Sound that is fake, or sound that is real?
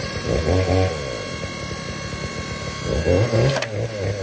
real